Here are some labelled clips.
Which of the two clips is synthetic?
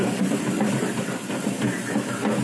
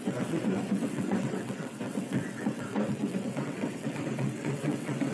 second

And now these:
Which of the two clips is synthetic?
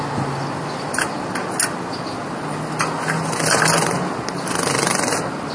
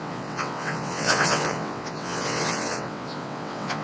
second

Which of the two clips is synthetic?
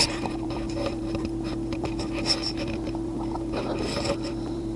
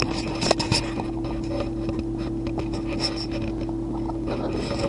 first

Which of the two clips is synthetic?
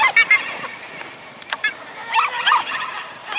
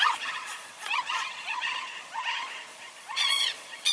second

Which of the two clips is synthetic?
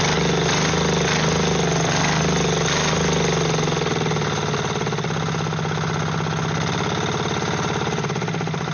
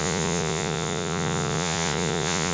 second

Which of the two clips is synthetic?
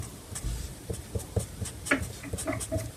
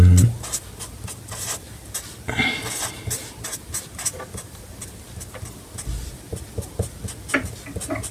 first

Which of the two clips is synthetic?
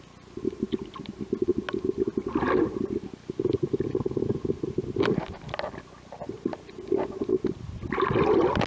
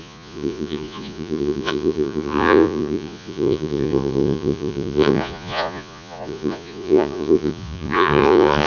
second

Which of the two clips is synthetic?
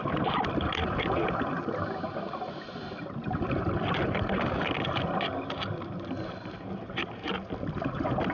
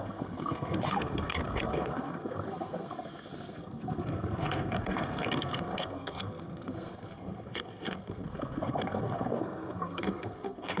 second